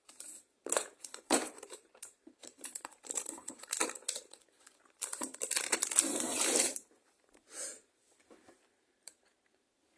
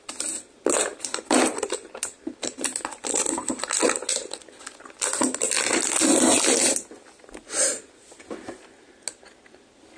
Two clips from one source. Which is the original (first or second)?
second